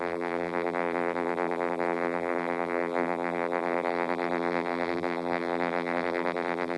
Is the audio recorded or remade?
remade